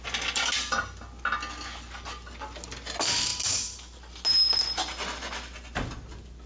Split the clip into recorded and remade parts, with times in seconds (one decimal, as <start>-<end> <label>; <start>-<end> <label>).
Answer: 0.0-6.5 recorded

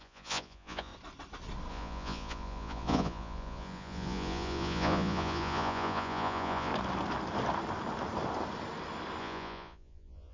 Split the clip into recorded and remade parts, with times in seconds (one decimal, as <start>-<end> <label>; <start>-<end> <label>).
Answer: 0.0-0.9 remade; 0.9-1.7 recorded; 1.7-6.7 remade; 6.7-9.2 recorded; 9.2-10.3 remade

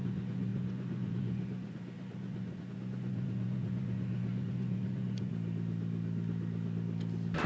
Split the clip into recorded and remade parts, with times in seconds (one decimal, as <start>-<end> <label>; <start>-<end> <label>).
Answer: 0.0-5.3 remade; 5.3-7.5 recorded

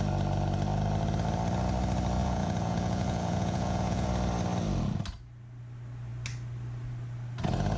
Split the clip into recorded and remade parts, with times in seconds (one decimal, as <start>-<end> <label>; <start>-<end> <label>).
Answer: 0.0-2.2 recorded; 2.2-4.1 remade; 4.1-7.8 recorded

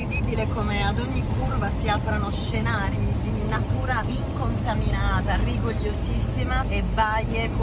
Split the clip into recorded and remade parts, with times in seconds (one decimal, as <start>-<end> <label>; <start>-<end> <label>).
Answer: 0.0-7.6 recorded